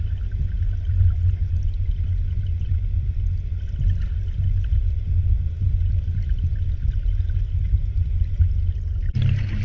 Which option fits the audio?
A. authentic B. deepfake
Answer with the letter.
A